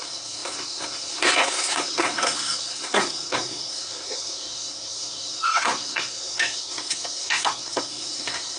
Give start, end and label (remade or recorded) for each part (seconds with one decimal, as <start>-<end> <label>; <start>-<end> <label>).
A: 0.0-8.6 remade

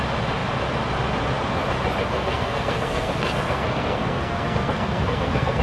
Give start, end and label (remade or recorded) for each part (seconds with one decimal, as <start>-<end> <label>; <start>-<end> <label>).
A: 0.0-2.0 recorded; 2.0-5.6 remade